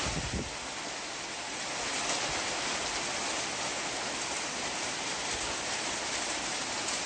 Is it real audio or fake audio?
real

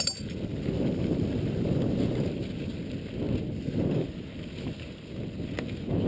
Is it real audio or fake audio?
real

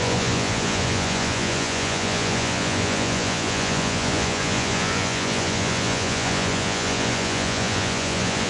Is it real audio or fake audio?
fake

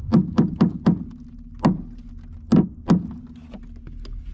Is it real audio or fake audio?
real